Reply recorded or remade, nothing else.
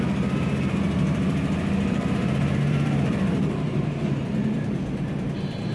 remade